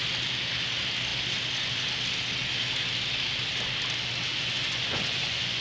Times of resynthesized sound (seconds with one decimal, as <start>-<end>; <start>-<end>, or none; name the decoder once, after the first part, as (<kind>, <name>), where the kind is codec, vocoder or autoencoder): 4.3-5.6 (vocoder, Vocos)

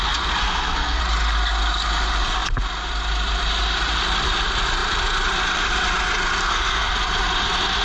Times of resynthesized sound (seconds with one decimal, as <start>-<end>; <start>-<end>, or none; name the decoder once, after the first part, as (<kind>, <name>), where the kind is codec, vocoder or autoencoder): 0.4-1.0 (codec, SNAC); 6.4-6.9

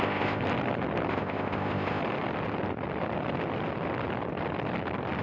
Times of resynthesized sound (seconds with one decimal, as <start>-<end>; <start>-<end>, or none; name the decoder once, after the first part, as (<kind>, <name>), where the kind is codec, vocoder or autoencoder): 0.0-0.4 (codec, ZipCodec); 1.1-2.0